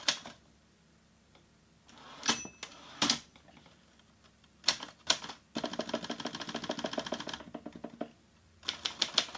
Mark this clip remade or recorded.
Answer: recorded